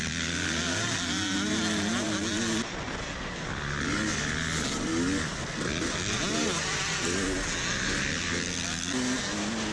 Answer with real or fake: real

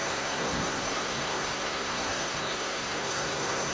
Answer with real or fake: fake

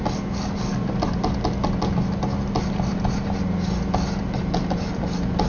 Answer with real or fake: real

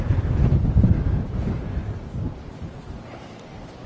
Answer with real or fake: real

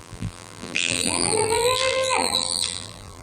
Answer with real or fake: fake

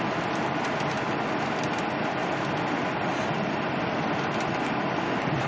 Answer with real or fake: real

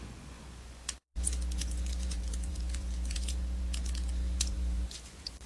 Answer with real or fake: fake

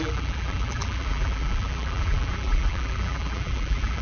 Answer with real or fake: fake